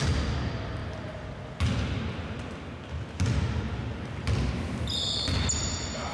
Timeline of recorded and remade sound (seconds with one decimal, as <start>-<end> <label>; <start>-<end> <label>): 0.0-6.1 recorded